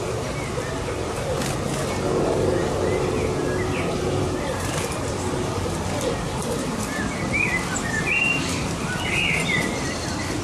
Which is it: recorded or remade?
recorded